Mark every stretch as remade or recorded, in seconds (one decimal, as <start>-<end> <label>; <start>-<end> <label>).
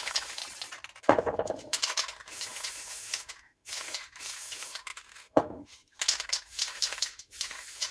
0.0-0.4 remade; 0.4-1.0 recorded; 1.0-7.9 remade